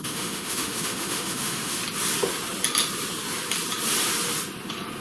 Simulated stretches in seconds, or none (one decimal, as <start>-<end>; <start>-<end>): 0.0-1.8